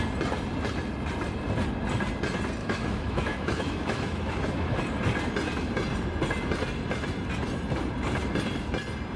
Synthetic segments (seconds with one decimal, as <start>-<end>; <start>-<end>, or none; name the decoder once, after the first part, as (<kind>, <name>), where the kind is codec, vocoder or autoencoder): 2.6-4.8 (autoencoder, DAC-VAE)